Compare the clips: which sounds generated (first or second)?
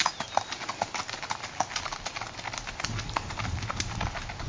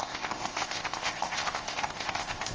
second